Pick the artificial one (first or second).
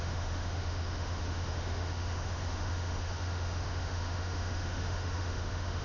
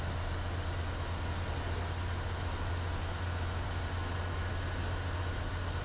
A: first